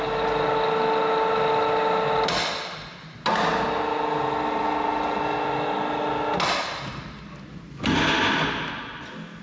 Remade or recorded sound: recorded